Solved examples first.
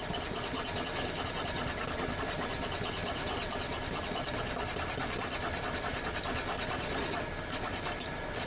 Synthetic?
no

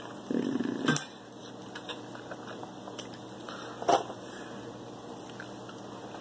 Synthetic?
no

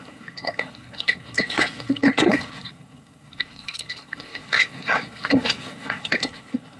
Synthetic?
yes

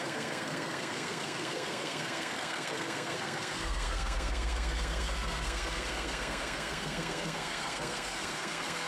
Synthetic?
yes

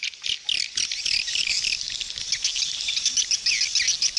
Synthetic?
no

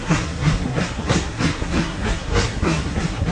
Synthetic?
yes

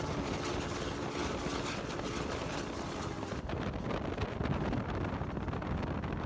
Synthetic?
no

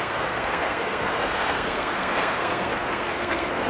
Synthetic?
yes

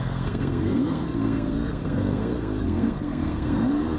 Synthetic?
yes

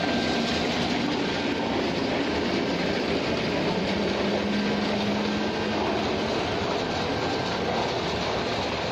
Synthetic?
no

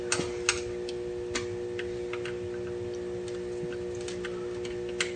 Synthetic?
no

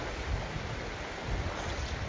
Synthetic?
no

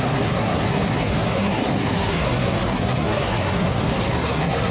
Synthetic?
yes